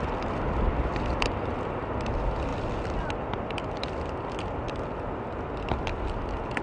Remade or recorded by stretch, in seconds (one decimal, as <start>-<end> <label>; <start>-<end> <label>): 0.0-6.6 recorded